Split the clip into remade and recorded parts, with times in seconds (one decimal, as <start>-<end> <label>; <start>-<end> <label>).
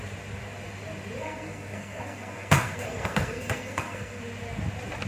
0.0-1.2 recorded; 1.2-4.2 remade; 4.2-5.1 recorded